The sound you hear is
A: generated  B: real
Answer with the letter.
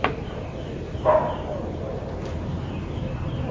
A